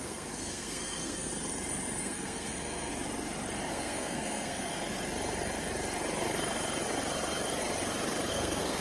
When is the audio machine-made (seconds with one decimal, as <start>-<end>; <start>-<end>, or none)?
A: 0.0-1.3; 2.0-2.9; 3.7-4.7; 8.3-8.8